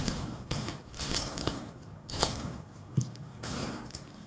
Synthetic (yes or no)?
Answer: yes